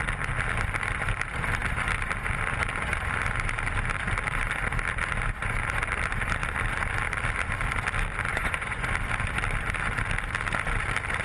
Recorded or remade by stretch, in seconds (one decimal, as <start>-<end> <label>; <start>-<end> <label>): 0.0-8.3 recorded; 8.3-8.9 remade; 8.9-11.2 recorded